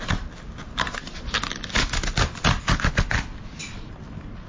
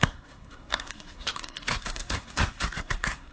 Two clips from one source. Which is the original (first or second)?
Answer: first